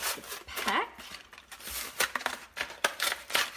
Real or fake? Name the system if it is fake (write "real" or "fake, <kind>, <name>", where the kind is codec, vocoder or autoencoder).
real